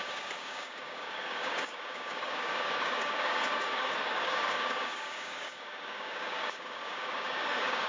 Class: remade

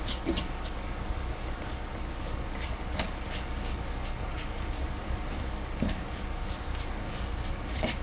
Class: remade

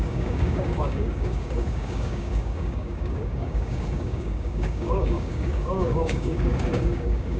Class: remade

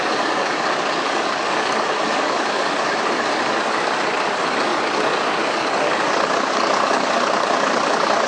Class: remade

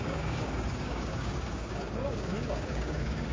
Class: remade